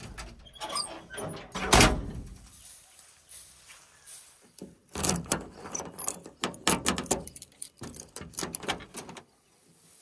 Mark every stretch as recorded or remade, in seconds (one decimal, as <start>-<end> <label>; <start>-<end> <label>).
0.0-10.0 recorded